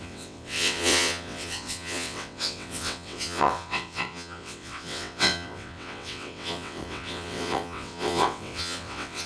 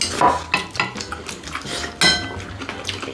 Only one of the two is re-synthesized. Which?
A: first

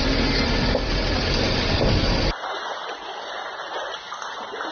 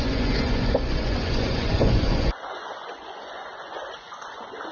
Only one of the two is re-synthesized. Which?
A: second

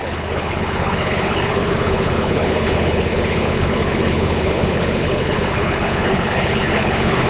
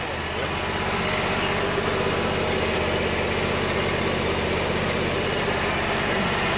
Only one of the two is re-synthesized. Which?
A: first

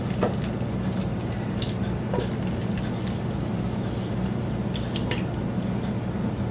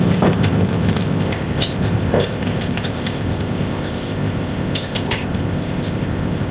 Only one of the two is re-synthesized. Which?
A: second